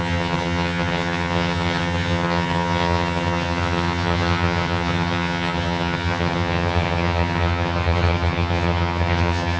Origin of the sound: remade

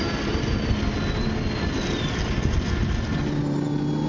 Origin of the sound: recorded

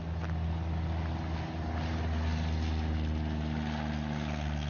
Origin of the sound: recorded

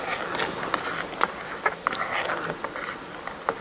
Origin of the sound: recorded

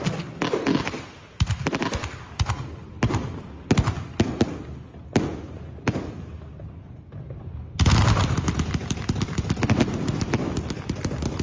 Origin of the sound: recorded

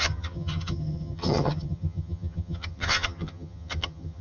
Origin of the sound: remade